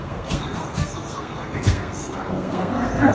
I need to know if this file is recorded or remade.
remade